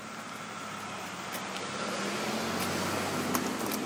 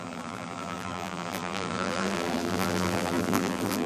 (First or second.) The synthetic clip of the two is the second